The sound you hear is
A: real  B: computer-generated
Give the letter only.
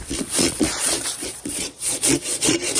B